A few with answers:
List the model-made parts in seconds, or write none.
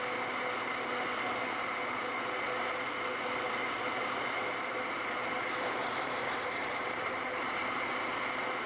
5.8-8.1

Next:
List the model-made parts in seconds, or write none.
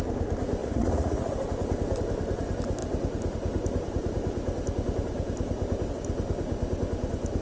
0.6-1.3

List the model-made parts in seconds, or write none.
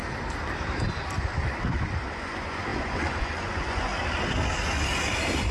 2.1-3.9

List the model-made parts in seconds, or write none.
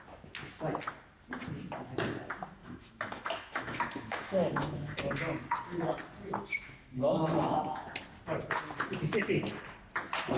2.6-5.0; 6.5-7.9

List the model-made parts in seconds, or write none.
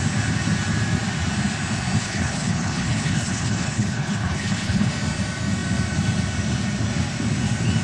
2.0-4.9